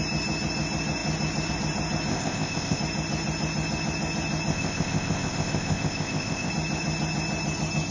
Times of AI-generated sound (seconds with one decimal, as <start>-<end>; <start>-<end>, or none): 2.1-2.8; 4.5-6.5